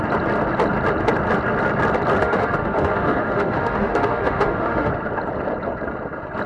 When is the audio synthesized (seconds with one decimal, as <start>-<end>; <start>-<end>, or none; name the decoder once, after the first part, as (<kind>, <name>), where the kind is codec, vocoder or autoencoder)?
2.2-4.9 (autoencoder, DAC-VAE)